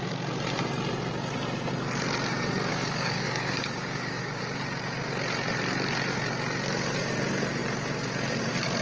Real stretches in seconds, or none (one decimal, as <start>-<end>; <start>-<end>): 0.0-2.7; 4.4-8.8